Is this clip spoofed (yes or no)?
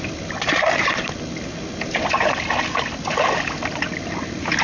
no